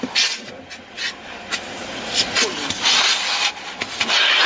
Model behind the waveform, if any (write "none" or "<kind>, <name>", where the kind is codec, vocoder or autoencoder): none